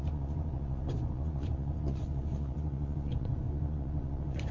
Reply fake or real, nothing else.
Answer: fake